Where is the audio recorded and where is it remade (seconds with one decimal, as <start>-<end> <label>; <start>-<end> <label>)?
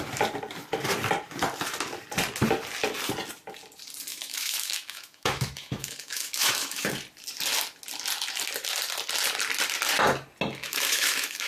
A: 0.0-4.1 recorded; 4.1-6.9 remade; 6.9-10.6 recorded; 10.6-11.5 remade